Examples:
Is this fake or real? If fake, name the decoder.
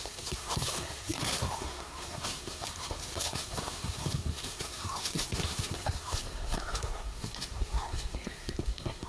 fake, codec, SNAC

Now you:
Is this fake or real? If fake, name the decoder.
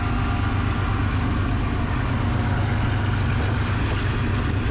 real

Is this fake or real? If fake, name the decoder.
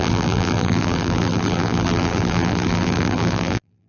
fake, vocoder, BigVGAN v2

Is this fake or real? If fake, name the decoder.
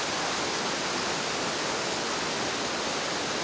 real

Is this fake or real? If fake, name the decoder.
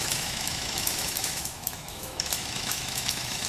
fake, autoencoder, DAC-VAE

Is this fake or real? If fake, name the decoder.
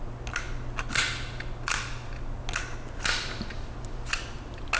real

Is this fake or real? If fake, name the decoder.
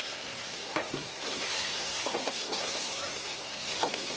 fake, codec, SNAC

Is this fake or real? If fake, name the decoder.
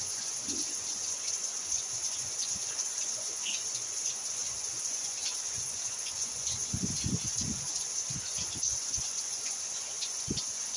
fake, vocoder, Vocos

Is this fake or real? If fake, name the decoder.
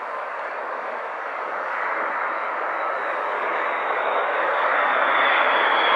fake, codec, DAC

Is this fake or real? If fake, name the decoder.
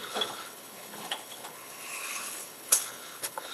fake, codec, HILCodec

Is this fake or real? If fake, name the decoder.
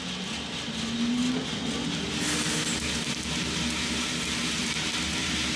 real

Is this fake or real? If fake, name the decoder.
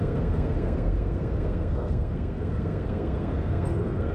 fake, codec, SNAC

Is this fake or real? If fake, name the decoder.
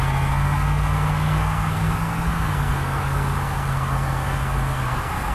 fake, codec, SNAC